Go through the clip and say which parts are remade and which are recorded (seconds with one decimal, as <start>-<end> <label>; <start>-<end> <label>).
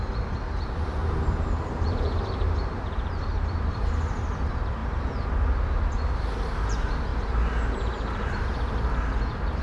0.0-1.0 recorded; 1.0-3.9 remade; 3.9-7.1 recorded; 7.1-8.8 remade; 8.8-9.6 recorded